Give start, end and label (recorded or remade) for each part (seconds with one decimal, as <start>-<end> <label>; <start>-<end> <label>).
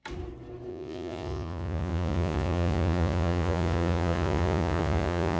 0.0-0.7 recorded; 0.7-5.4 remade